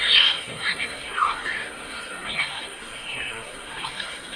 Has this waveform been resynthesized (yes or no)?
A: yes